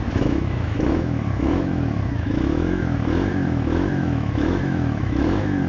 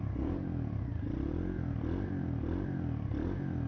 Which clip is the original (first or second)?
second